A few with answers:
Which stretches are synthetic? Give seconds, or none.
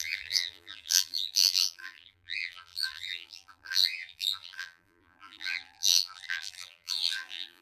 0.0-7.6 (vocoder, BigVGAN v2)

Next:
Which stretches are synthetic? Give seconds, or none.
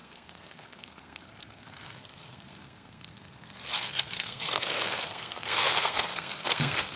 0.0-7.0 (codec, SNAC)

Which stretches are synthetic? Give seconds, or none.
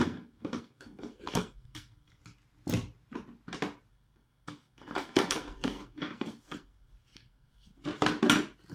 0.0-2.2 (codec, SNAC); 3.9-7.8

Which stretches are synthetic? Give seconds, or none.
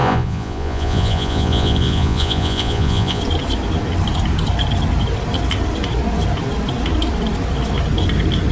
0.0-3.2 (vocoder, Vocos)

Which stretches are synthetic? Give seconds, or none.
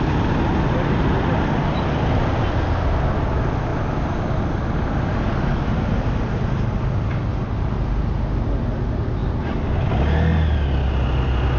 none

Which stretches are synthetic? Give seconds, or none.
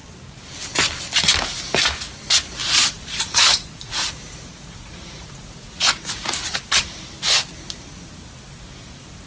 2.6-6.6 (vocoder, Vocos)